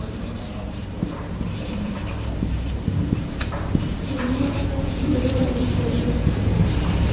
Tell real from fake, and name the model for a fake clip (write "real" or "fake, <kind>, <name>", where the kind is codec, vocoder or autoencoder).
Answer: fake, vocoder, BigVGAN v2